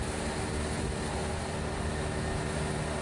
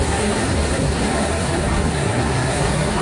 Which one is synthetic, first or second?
second